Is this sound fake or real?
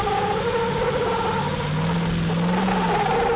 real